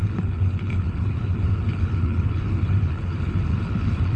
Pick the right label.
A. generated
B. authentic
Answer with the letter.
A